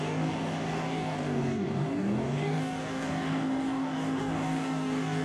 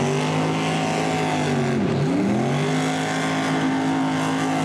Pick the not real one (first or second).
first